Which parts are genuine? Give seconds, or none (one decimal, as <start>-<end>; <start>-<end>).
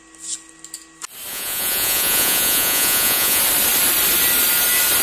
0.0-1.3; 3.4-5.0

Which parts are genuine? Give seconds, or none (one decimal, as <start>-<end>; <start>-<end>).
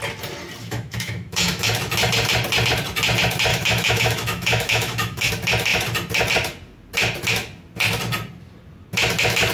0.0-0.6; 1.7-3.5; 5.3-9.5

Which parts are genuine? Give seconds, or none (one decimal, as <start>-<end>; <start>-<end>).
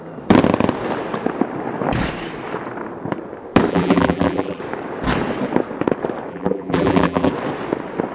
0.0-3.7; 4.6-6.3; 7.3-8.1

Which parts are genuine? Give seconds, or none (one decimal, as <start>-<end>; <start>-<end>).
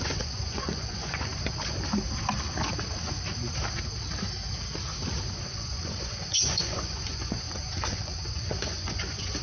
1.3-5.5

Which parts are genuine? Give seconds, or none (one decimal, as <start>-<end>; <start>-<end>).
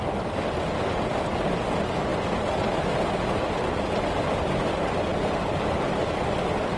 0.0-5.1; 6.1-6.8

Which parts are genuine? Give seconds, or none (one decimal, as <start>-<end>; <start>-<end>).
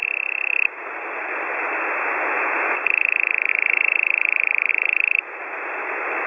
0.0-6.3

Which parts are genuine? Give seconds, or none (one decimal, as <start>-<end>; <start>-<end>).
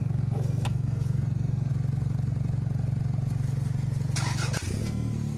1.7-4.8